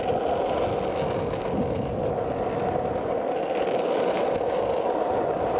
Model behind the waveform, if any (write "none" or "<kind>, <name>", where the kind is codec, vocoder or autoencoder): none